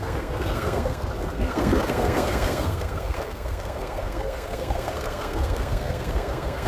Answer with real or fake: fake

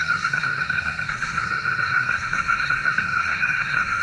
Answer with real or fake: fake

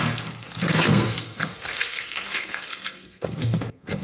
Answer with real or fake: fake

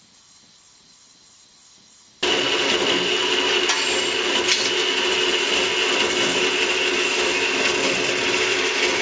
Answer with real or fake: real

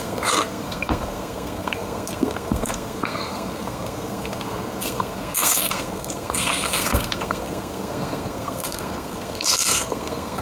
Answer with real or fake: fake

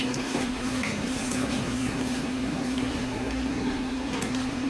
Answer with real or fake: fake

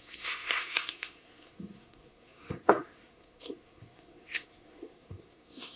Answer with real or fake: fake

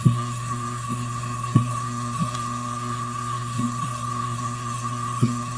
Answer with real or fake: fake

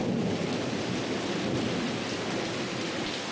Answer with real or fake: real